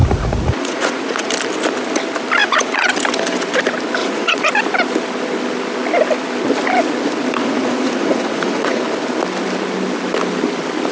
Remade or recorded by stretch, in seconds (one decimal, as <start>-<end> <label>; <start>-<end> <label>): 0.0-1.3 remade; 1.3-2.4 recorded; 2.4-2.9 remade; 2.9-4.0 recorded; 4.0-4.5 remade; 4.5-7.4 recorded; 7.4-8.8 remade; 8.8-10.9 recorded